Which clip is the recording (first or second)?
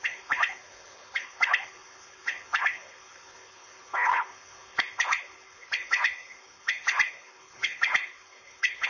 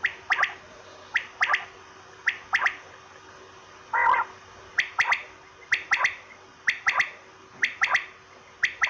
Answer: second